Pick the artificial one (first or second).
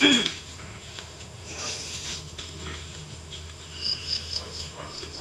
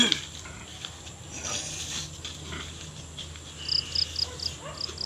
first